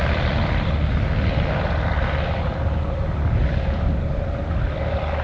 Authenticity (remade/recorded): recorded